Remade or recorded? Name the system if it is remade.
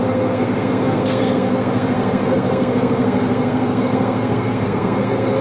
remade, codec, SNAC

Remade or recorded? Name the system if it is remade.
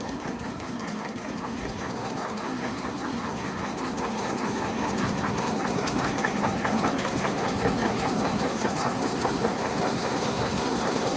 remade, codec, SNAC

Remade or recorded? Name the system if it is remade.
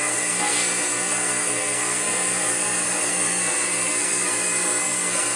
remade, codec, SNAC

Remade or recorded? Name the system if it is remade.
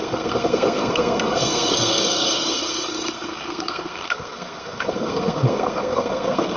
remade, codec, SNAC